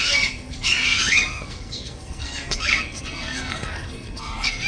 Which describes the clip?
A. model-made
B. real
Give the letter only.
A